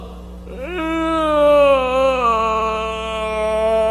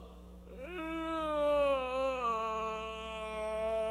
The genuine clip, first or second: first